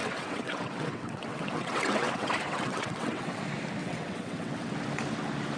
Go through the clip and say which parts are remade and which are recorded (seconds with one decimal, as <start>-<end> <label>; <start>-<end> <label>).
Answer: 0.0-3.4 remade; 3.4-3.8 recorded; 3.8-4.7 remade; 4.7-5.6 recorded

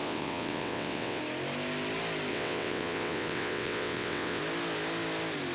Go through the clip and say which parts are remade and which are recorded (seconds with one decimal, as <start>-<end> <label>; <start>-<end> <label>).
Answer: 0.0-1.2 remade; 1.2-2.3 recorded; 2.3-4.4 remade; 4.4-5.5 recorded

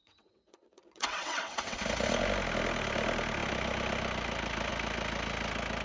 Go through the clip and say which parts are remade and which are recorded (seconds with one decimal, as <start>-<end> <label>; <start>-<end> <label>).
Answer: 0.0-1.8 remade; 1.8-5.8 recorded

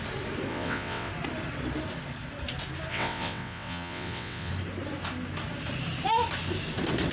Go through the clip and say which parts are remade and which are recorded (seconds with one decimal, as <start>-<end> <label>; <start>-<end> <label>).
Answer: 0.0-0.5 recorded; 0.5-1.1 remade; 1.1-2.9 recorded; 2.9-4.5 remade; 4.5-7.1 recorded

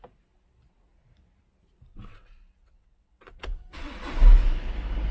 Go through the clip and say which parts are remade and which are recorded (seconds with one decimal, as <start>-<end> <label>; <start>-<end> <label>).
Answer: 0.0-1.9 recorded; 1.9-4.0 remade; 4.0-5.1 recorded

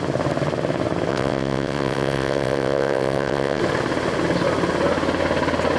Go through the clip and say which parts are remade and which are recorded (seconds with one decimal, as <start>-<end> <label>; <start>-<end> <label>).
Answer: 0.0-1.1 recorded; 1.1-3.6 remade; 3.6-5.8 recorded